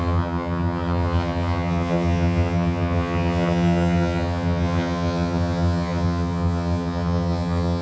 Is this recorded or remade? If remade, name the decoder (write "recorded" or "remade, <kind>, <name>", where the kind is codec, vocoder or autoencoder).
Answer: remade, vocoder, HiFi-GAN